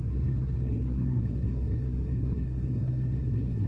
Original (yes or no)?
no